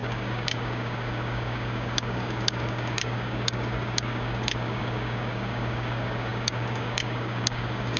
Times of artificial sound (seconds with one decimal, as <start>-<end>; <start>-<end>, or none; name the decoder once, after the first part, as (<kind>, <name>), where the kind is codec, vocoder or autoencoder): 0.0-8.0 (codec, DAC)